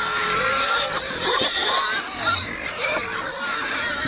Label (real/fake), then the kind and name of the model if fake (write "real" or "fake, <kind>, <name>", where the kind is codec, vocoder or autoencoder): real